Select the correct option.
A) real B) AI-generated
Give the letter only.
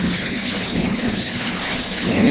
B